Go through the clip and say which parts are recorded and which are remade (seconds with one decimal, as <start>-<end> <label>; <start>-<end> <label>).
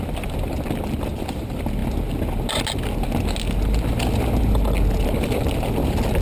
0.0-6.2 recorded